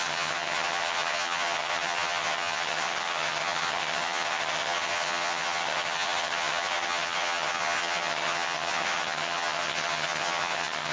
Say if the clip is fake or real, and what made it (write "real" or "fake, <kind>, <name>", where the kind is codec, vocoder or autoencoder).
fake, vocoder, HiFi-GAN